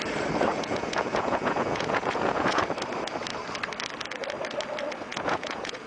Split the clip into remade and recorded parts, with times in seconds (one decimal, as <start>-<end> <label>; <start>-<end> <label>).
0.0-0.5 recorded; 0.5-2.6 remade; 2.6-5.1 recorded; 5.1-5.9 remade